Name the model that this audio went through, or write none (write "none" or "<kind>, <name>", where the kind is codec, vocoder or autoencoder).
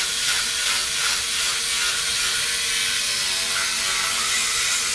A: none